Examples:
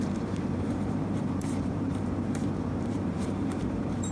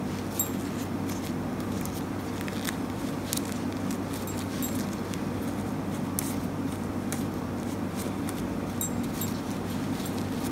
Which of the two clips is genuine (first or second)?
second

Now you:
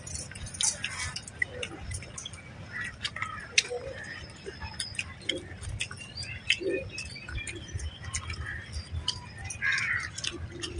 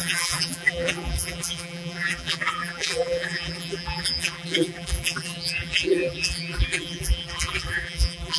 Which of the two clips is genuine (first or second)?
first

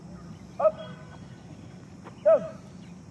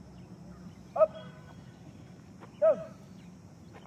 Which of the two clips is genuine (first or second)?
second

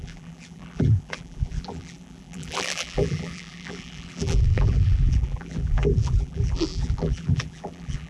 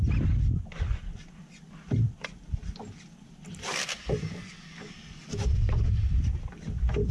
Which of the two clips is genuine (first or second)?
second